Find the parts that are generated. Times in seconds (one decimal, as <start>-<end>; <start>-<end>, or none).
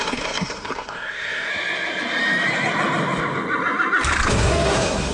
0.0-1.5; 4.3-5.1